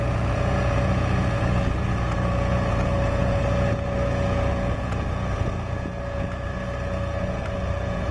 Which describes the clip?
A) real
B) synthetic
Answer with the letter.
B